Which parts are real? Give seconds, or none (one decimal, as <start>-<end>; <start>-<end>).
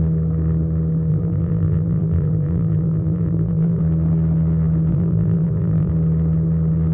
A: 0.0-1.1; 3.8-4.9; 5.9-6.9